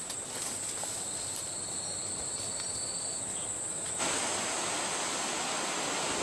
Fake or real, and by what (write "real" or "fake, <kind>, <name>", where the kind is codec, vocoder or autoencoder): real